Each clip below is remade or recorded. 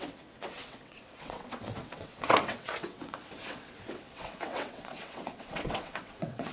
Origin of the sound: remade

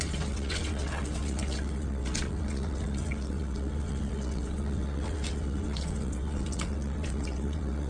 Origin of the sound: remade